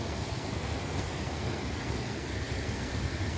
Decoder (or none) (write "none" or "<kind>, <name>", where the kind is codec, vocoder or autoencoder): codec, SNAC